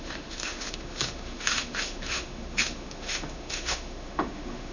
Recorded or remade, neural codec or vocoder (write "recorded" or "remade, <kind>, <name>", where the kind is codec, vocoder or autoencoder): remade, autoencoder, DAC-VAE